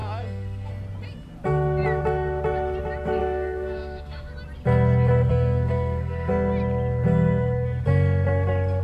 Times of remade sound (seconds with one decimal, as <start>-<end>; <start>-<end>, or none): 0.0-0.7; 3.2-4.3; 5.3-6.3